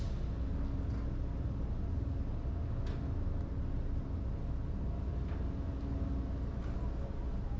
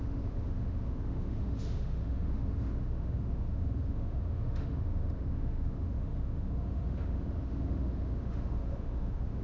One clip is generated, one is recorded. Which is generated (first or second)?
second